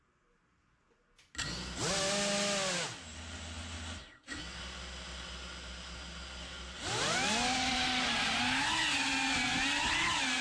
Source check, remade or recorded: recorded